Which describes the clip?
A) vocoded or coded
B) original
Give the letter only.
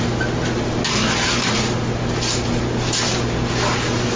B